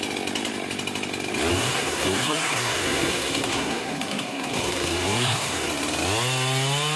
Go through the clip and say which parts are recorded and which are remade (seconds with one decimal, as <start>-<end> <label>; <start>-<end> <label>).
0.0-1.5 recorded; 1.5-5.7 remade; 5.7-7.0 recorded